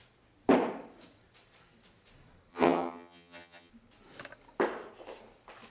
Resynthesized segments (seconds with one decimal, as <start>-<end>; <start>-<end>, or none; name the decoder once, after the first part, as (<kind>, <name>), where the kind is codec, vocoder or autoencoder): 2.5-3.7 (vocoder, HiFi-GAN)